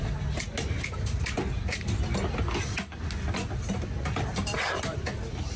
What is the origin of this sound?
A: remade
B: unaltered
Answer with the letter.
B